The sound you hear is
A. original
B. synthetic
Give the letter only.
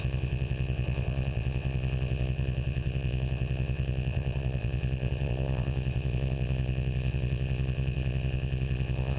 B